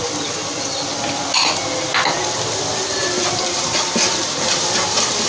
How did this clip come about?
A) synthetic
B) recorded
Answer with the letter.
B